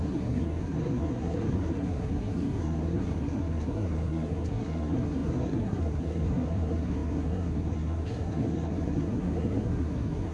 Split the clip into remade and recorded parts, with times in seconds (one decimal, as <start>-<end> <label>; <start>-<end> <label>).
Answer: 0.0-10.3 remade